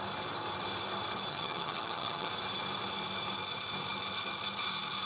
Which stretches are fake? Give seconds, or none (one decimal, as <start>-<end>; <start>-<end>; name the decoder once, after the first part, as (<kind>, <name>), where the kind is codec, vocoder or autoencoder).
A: 1.3-2.3 (vocoder, HiFi-GAN)